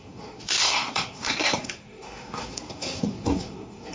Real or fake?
fake